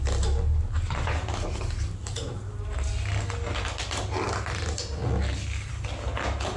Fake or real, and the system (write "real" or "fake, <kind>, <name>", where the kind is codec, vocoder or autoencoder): real